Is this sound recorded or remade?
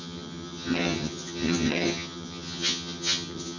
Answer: remade